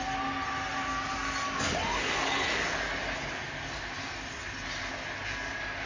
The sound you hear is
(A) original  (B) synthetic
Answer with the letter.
A